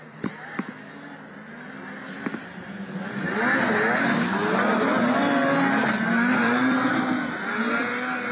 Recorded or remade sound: recorded